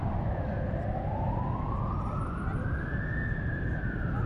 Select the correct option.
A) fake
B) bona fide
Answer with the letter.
B